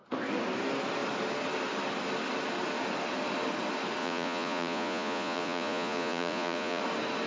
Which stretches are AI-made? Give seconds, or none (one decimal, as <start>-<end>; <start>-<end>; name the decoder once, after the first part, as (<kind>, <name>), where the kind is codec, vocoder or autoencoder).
4.0-6.8 (vocoder, Vocos)